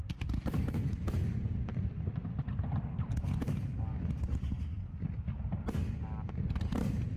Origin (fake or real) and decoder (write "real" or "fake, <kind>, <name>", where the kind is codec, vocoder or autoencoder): real